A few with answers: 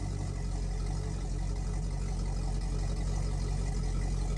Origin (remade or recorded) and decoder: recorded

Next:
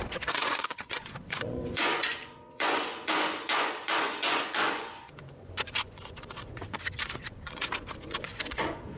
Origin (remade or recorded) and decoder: remade, vocoder, Vocos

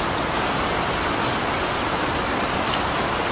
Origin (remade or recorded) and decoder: recorded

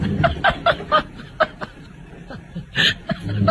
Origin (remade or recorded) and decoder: recorded